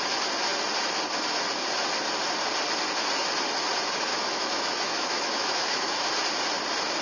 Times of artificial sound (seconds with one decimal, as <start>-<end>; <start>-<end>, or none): 4.1-6.1